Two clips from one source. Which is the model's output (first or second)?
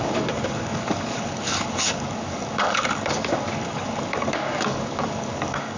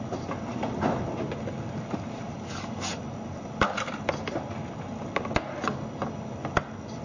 first